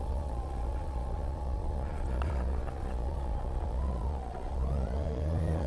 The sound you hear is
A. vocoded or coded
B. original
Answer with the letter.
A